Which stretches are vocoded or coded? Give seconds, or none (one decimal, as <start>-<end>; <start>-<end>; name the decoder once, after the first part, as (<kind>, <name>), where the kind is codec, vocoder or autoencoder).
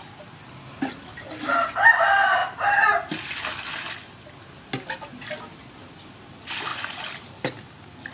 none